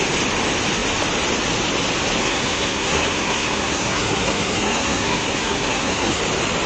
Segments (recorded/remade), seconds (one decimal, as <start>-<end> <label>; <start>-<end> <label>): 0.0-2.2 recorded; 2.2-6.2 remade; 6.2-6.7 recorded